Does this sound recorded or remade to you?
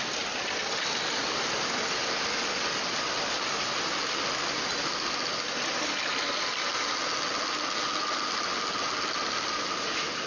recorded